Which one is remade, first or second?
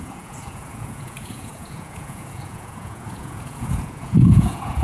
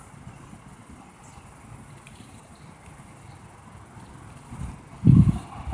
first